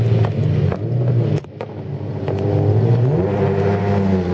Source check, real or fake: real